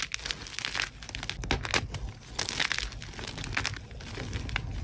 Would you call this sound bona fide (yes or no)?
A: yes